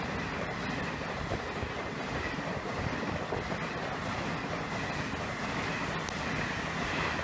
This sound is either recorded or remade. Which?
recorded